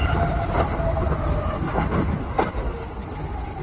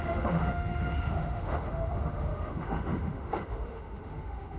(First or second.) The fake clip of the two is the second